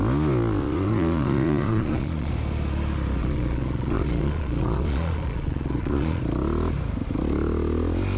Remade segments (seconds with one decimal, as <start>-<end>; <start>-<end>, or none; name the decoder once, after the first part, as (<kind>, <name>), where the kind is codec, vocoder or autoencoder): 0.6-2.3 (vocoder, Vocos); 3.2-6.2